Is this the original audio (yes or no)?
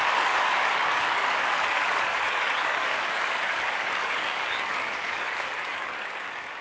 no